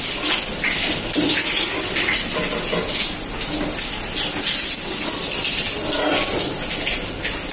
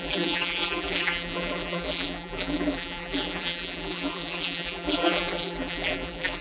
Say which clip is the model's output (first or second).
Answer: second